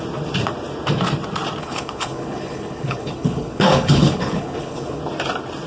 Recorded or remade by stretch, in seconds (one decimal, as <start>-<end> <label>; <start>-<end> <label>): 0.0-1.6 recorded; 1.6-5.0 remade; 5.0-5.7 recorded